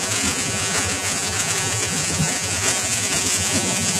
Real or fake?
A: fake